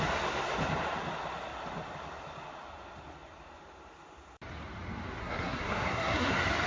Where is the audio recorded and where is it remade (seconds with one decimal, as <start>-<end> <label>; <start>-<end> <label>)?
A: 0.0-5.2 recorded; 5.2-6.3 remade; 6.3-6.7 recorded

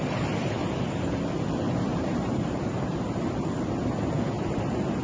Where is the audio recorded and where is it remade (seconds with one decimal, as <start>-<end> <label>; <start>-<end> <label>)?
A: 0.0-1.9 recorded; 1.9-3.3 remade; 3.3-5.0 recorded

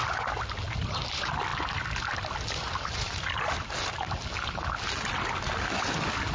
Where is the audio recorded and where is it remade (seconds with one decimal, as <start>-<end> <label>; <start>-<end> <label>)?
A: 0.0-6.3 recorded

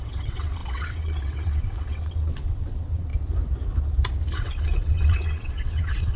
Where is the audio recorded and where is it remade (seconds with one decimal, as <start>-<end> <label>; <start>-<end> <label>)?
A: 0.0-3.1 remade; 3.1-4.4 recorded; 4.4-6.2 remade

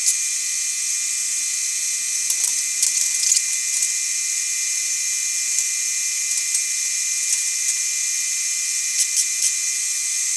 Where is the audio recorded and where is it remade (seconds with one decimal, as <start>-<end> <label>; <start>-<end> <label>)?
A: 0.0-10.4 recorded

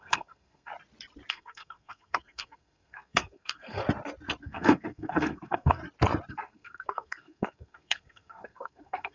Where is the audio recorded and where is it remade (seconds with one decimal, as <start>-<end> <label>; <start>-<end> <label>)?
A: 0.0-0.7 remade; 0.7-1.3 recorded; 1.3-3.8 remade; 3.8-4.4 recorded; 4.4-5.8 remade; 5.8-6.3 recorded; 6.3-9.1 remade